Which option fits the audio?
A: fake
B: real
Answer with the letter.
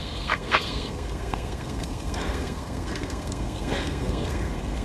A